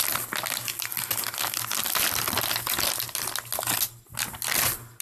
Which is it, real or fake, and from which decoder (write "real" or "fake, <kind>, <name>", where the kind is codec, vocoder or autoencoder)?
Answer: real